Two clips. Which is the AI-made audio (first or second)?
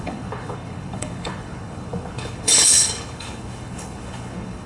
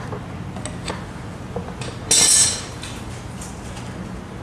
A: first